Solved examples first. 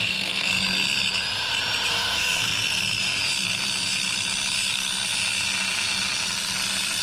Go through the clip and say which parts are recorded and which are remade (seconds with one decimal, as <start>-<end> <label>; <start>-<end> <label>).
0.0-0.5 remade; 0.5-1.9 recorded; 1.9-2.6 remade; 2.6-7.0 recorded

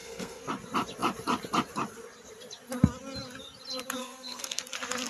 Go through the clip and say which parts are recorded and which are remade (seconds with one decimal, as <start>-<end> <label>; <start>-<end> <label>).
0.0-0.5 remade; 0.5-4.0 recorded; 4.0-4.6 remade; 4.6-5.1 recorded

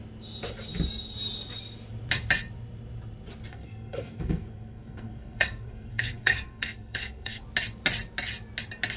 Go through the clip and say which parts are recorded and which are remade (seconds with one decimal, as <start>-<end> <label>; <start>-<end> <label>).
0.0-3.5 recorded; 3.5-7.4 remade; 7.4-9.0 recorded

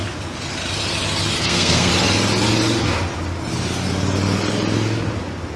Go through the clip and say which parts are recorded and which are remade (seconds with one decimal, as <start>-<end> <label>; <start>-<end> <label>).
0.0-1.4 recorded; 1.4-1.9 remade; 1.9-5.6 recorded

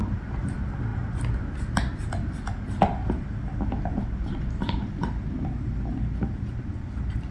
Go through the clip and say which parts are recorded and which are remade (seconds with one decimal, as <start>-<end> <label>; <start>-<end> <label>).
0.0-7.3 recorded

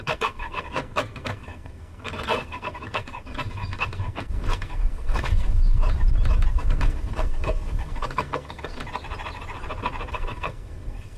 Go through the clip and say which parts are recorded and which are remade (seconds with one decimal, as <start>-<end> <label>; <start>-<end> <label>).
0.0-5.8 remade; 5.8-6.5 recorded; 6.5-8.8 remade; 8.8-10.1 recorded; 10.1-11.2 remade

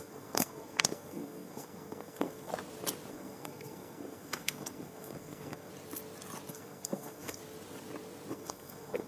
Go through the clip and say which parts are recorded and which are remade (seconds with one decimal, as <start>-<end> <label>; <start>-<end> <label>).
0.0-2.5 remade; 2.5-3.1 recorded; 3.1-5.7 remade; 5.7-6.5 recorded; 6.5-7.4 remade; 7.4-8.3 recorded; 8.3-9.1 remade

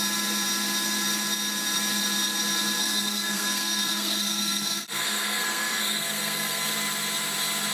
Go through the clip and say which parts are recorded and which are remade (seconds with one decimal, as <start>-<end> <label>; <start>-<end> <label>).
0.0-2.8 recorded; 2.8-6.7 remade; 6.7-7.7 recorded